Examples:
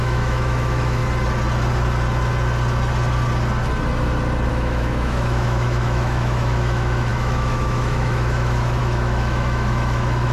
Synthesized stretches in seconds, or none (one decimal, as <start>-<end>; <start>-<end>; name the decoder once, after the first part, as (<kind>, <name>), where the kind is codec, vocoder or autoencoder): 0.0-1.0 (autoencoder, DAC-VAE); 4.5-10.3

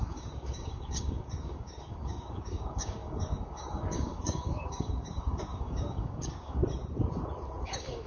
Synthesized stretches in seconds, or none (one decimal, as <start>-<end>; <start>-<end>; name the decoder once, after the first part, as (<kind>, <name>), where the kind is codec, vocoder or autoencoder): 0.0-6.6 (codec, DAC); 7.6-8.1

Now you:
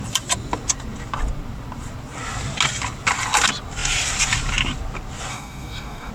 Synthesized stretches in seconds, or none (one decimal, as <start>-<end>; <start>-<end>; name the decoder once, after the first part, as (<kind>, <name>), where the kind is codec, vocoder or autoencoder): 5.3-6.1 (codec, DAC)

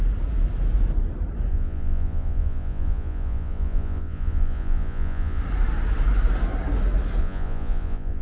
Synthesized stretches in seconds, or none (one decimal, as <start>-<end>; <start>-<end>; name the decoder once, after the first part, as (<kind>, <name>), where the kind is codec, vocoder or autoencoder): 1.5-5.4 (vocoder, Vocos); 7.2-8.2

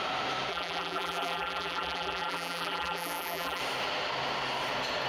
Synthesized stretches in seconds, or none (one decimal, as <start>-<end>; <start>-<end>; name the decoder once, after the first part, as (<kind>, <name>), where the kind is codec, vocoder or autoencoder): 0.5-3.6 (vocoder, BigVGAN v2)

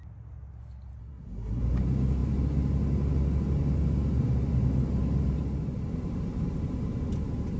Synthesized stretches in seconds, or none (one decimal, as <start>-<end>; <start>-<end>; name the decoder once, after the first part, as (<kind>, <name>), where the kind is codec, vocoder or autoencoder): 1.0-1.6 (codec, SNAC)